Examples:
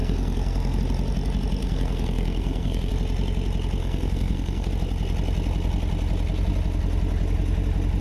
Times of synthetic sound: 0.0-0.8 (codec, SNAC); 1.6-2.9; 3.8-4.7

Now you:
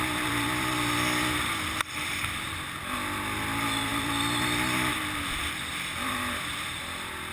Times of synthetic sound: none

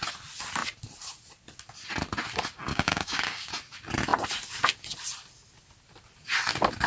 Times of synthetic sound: 2.7-3.5 (codec, DAC)

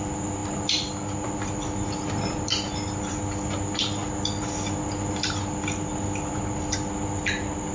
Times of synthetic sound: none

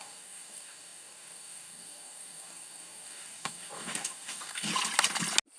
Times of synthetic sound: 0.0-4.7 (codec, DAC)

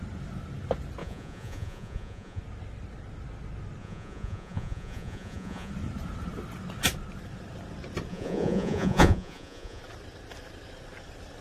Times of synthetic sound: 1.0-2.4 (vocoder, Vocos); 3.8-5.7; 8.1-9.8

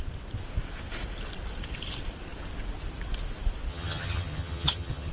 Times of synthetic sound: 3.7-5.1 (vocoder, HiFi-GAN)

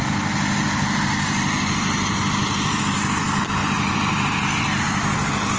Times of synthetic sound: none